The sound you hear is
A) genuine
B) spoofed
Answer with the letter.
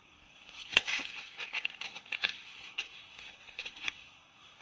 B